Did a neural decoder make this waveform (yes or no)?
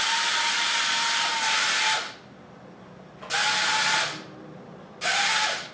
no